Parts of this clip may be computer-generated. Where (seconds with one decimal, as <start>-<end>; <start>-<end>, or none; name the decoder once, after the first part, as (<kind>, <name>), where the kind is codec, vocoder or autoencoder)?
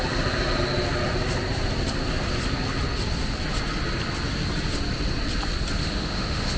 5.8-6.6 (autoencoder, DAC-VAE)